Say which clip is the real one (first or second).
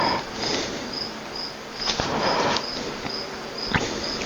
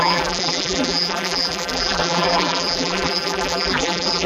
first